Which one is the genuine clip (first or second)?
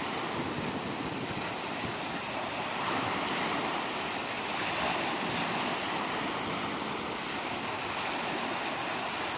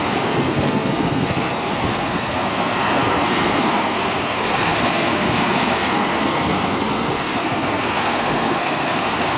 first